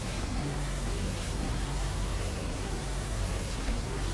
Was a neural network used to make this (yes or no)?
yes